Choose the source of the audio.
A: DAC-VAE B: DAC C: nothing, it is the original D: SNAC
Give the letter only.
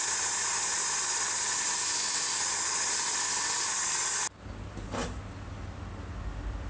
C